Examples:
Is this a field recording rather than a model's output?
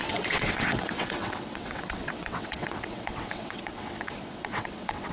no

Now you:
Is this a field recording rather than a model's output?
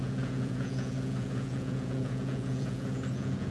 no